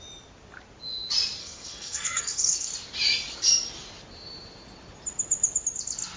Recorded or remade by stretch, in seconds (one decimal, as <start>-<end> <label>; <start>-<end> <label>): 0.0-1.4 recorded; 1.4-2.7 remade; 2.7-6.2 recorded